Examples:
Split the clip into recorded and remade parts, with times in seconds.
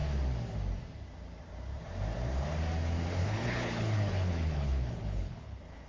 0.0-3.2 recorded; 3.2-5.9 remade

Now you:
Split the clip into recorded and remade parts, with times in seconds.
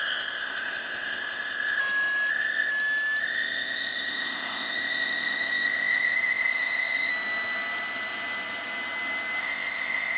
0.0-1.8 remade; 1.8-2.3 recorded; 2.3-2.7 remade; 2.7-3.2 recorded; 3.2-7.1 remade; 7.1-9.4 recorded; 9.4-10.2 remade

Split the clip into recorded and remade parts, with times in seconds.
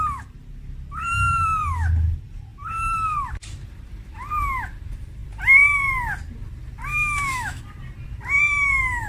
0.0-6.9 recorded; 6.9-7.6 remade; 7.6-9.1 recorded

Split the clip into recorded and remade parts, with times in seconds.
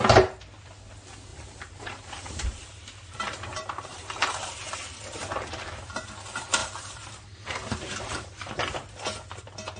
0.0-1.3 recorded; 1.3-4.4 remade; 4.4-6.6 recorded; 6.6-8.6 remade; 8.6-9.8 recorded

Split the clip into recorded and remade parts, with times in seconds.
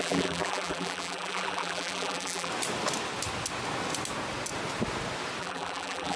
0.0-2.5 remade; 2.5-5.4 recorded; 5.4-6.2 remade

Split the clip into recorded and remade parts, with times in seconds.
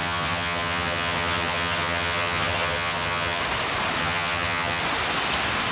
0.0-3.4 remade; 3.4-4.0 recorded; 4.0-4.8 remade; 4.8-5.7 recorded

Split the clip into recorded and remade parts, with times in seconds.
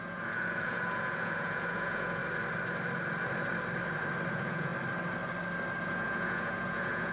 0.0-2.2 remade; 2.2-4.3 recorded; 4.3-4.7 remade; 4.7-5.8 recorded; 5.8-7.1 remade